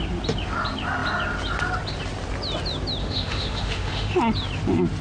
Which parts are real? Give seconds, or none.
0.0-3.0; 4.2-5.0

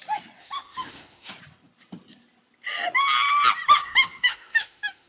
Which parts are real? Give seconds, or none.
0.0-0.4; 1.3-3.8

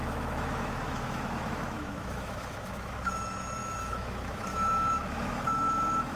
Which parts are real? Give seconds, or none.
none

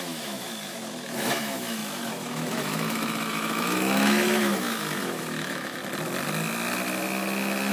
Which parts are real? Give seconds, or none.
5.8-7.7